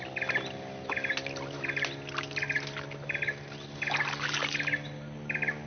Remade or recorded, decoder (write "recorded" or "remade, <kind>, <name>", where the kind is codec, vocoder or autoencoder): recorded